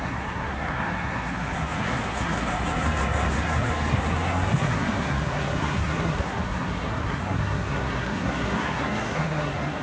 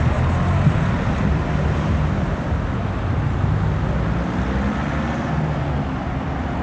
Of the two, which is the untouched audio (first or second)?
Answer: second